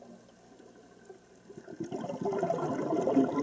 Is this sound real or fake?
real